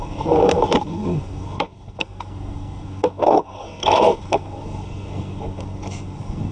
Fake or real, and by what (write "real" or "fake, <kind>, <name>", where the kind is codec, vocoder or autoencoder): fake, codec, SNAC